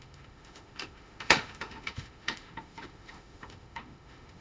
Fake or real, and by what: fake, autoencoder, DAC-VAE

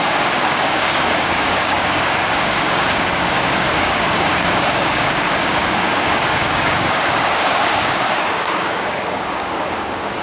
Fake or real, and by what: fake, codec, DAC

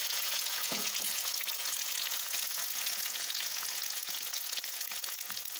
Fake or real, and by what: fake, vocoder, Vocos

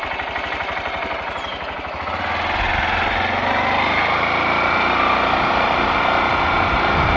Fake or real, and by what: real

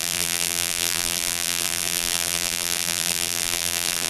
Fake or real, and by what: fake, vocoder, BigVGAN v2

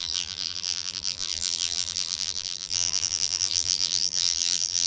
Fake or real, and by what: fake, vocoder, BigVGAN v2